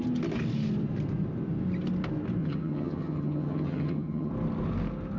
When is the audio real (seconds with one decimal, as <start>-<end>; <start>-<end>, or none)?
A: 0.0-2.4; 4.3-5.2